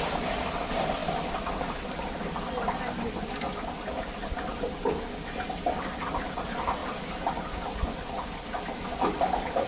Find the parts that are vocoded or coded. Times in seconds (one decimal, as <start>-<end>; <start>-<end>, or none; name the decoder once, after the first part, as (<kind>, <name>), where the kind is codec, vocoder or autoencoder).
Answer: none